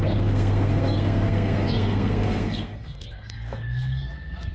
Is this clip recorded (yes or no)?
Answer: no